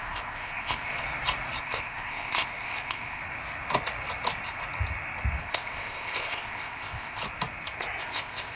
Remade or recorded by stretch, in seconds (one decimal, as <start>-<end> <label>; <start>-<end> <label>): 0.0-0.9 remade; 0.9-1.6 recorded; 1.6-3.2 remade; 3.2-5.4 recorded; 5.4-7.2 remade; 7.2-8.0 recorded; 8.0-8.6 remade